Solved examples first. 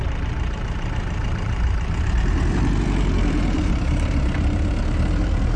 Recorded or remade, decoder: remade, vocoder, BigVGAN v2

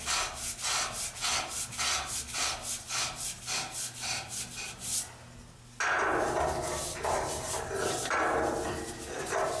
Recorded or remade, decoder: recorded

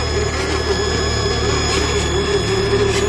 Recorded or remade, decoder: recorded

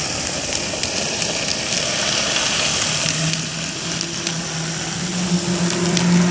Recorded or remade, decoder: recorded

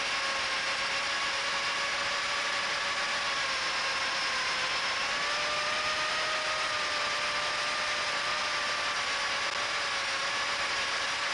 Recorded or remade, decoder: recorded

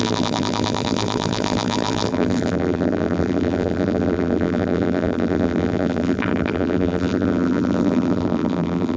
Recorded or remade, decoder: remade, vocoder, BigVGAN v2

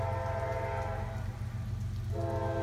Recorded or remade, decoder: recorded